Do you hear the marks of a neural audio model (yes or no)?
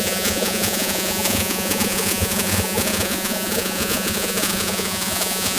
yes